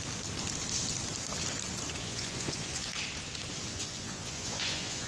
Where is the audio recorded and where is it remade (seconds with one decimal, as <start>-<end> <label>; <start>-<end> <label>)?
0.0-2.0 recorded; 2.0-2.9 remade; 2.9-3.7 recorded; 3.7-5.1 remade